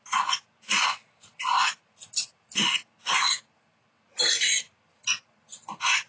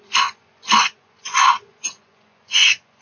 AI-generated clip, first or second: second